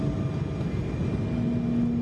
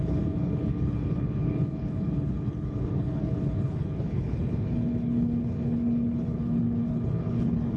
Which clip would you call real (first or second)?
first